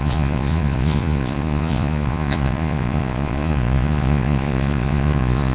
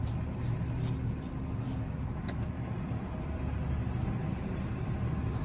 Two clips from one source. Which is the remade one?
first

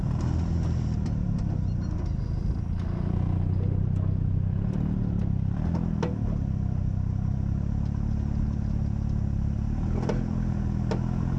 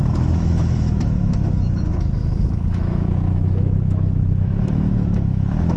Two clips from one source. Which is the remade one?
second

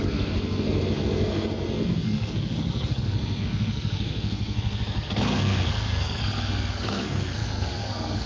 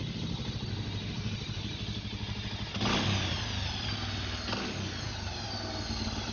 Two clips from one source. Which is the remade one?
first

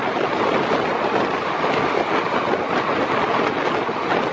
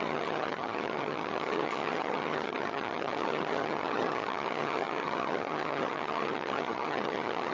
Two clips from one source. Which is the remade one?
second